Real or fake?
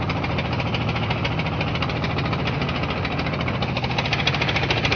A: real